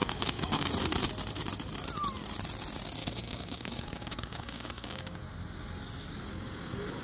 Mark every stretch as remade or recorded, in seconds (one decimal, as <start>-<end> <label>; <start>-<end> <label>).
0.0-0.7 remade; 0.7-3.0 recorded; 3.0-5.2 remade; 5.2-7.0 recorded